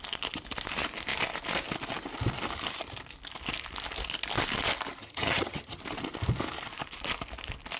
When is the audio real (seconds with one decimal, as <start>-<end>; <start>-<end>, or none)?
0.0-5.0; 5.8-7.8